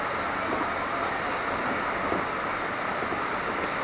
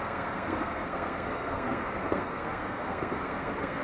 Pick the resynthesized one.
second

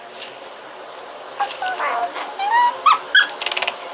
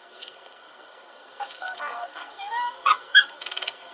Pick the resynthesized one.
second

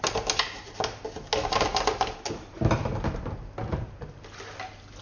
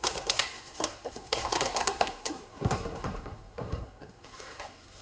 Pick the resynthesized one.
second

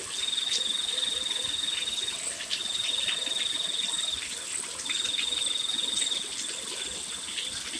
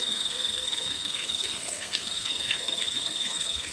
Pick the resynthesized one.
second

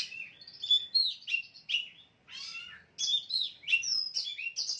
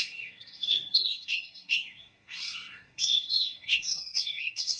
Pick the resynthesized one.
second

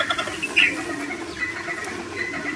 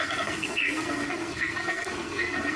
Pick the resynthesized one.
second